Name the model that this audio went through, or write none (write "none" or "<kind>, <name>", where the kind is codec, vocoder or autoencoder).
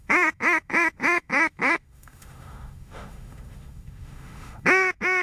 autoencoder, DAC-VAE